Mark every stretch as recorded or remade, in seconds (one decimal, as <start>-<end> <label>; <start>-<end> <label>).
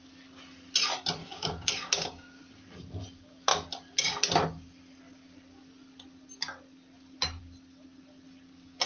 0.0-1.2 recorded; 1.2-2.4 remade; 2.4-8.9 recorded